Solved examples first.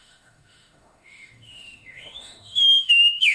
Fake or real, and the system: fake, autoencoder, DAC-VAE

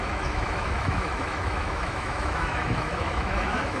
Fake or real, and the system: fake, autoencoder, DAC-VAE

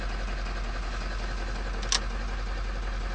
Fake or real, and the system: real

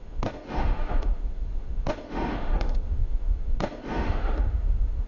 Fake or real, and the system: fake, autoencoder, DAC-VAE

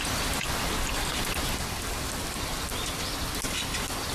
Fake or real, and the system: real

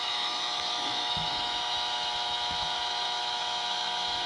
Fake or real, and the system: fake, autoencoder, DAC-VAE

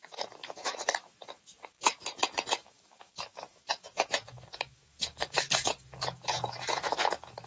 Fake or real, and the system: fake, autoencoder, DAC-VAE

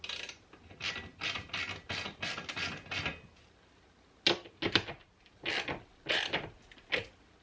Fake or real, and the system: real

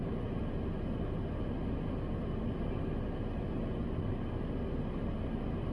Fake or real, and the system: real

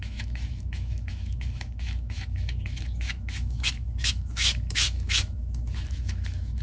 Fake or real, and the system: fake, autoencoder, DAC-VAE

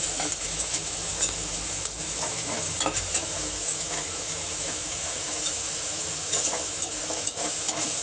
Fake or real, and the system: fake, autoencoder, DAC-VAE